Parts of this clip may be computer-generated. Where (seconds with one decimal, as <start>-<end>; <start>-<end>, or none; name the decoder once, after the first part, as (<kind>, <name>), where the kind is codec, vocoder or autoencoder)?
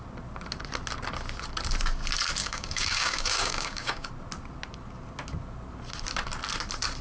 2.4-4.1 (codec, DAC)